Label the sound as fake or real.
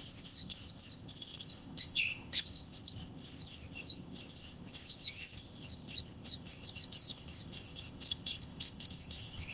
fake